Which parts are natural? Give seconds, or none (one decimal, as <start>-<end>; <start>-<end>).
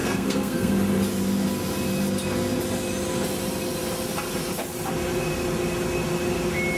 0.7-6.8